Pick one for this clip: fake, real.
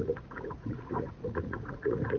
fake